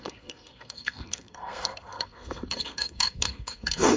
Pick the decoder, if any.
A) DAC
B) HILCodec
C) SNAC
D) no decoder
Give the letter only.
C